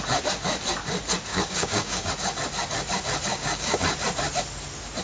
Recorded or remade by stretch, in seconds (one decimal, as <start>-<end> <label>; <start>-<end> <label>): 0.0-1.3 recorded; 1.3-2.1 remade; 2.1-3.3 recorded; 3.3-3.8 remade; 3.8-5.0 recorded